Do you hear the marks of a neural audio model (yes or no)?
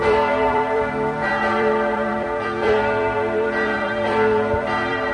yes